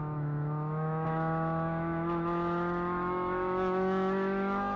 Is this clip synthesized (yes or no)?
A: yes